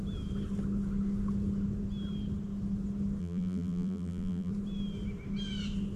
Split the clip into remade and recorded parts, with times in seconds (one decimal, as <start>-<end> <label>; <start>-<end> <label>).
0.0-3.2 recorded; 3.2-4.5 remade; 4.5-6.0 recorded